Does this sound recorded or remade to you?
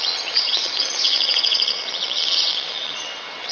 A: remade